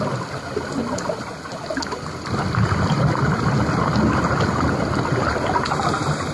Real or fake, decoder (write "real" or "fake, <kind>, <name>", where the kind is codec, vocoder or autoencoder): real